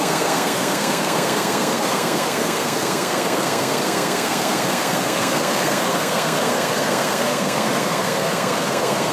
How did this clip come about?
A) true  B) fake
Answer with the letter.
B